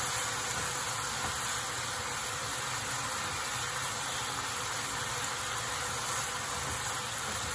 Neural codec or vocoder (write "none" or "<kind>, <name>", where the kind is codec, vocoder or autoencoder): none